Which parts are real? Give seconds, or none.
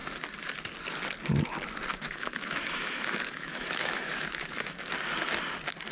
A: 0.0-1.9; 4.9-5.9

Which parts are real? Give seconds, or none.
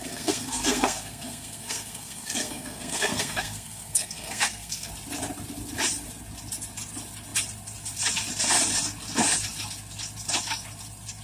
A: 4.9-11.2